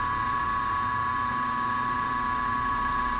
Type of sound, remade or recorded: remade